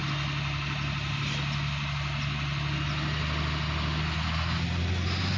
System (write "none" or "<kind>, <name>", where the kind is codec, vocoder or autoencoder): none